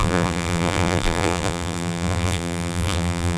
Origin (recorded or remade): remade